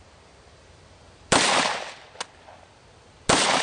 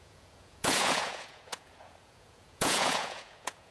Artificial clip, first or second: second